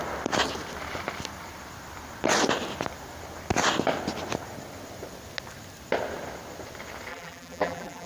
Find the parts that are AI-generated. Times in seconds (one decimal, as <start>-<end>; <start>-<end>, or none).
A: 7.1-8.1